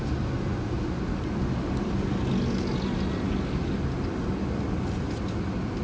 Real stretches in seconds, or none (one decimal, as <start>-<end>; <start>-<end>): 0.0-5.8